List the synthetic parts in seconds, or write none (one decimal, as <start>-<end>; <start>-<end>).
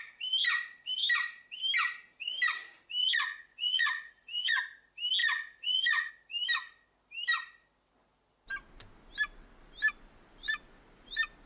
3.0-4.6; 5.2-6.1